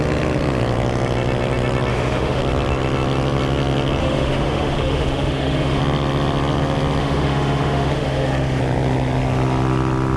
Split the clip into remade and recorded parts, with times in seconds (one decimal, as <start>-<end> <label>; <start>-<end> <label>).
0.0-1.9 recorded; 1.9-2.4 remade; 2.4-4.0 recorded; 4.0-5.8 remade; 5.8-7.0 recorded; 7.0-8.6 remade; 8.6-10.2 recorded